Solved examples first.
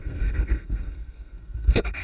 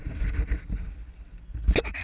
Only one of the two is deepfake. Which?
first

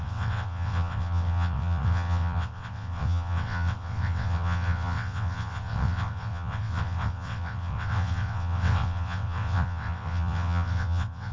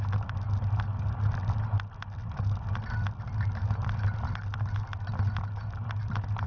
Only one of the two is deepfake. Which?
first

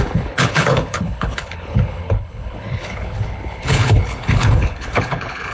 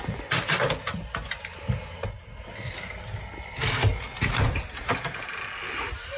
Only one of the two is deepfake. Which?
first